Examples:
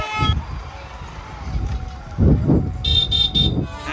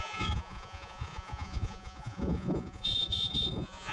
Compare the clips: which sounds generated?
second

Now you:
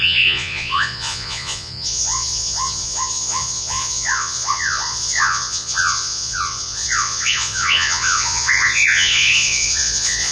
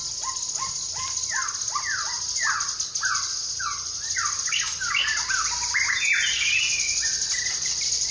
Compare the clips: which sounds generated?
first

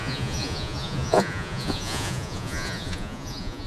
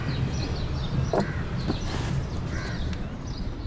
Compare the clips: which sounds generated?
first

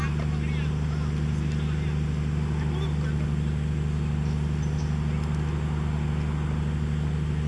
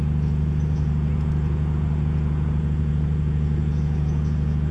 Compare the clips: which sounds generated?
second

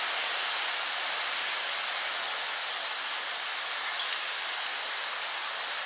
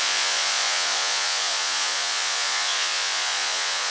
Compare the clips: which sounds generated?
second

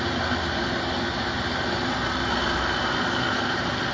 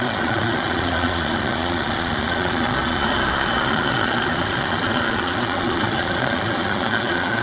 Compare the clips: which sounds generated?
second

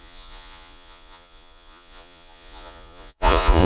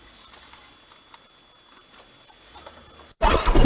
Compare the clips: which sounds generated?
first